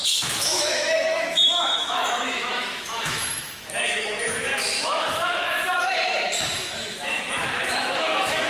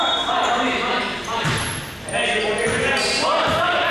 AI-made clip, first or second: first